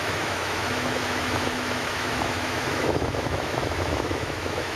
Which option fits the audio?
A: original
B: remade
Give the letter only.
B